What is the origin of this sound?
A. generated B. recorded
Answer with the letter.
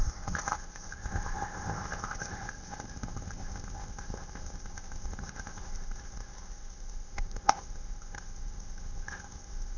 A